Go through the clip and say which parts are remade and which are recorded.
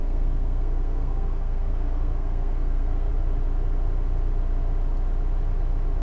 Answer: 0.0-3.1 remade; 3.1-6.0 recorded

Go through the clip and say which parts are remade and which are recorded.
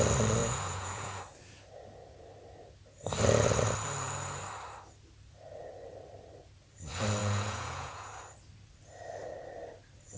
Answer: 0.0-0.4 recorded; 0.4-1.2 remade; 1.2-7.2 recorded; 7.2-8.1 remade; 8.1-10.2 recorded